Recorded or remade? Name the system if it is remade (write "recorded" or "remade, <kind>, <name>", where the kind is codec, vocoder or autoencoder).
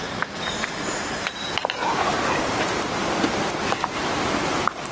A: remade, vocoder, BigVGAN v2